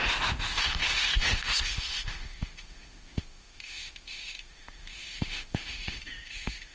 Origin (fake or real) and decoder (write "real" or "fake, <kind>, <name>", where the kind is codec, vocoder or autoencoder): fake, autoencoder, DAC-VAE